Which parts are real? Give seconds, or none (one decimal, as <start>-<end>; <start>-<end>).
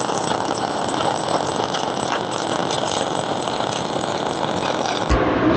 0.0-5.6